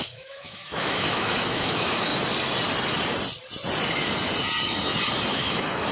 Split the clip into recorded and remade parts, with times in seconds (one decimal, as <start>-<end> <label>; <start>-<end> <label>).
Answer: 0.0-2.1 remade; 2.1-5.3 recorded; 5.3-5.9 remade